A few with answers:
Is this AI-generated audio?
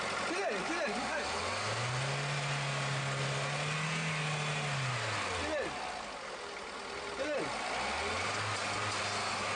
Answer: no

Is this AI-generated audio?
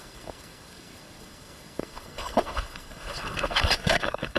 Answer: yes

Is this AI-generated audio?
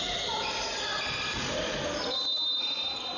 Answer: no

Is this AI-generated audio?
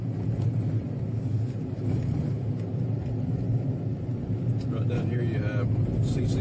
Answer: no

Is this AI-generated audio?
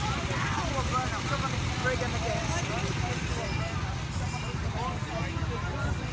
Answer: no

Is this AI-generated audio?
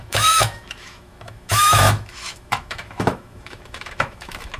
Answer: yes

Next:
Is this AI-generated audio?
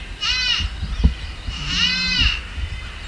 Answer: no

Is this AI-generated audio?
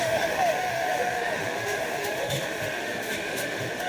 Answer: yes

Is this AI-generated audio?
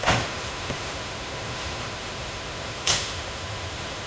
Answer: yes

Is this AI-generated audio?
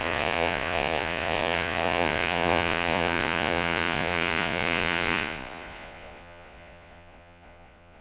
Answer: yes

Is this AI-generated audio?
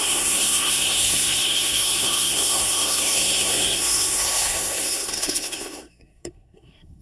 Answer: yes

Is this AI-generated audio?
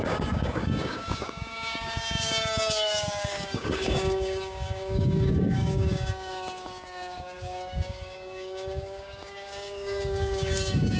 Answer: yes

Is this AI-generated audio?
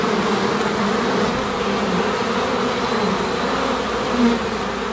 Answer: no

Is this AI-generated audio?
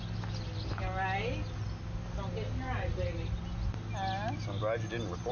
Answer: no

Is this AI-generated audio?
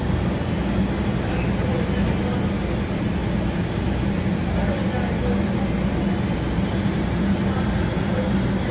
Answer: no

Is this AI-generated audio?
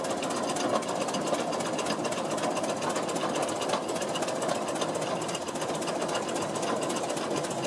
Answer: no